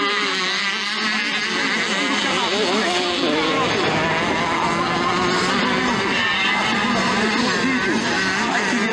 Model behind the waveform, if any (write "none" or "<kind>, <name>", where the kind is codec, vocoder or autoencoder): none